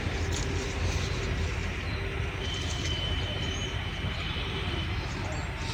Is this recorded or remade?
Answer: remade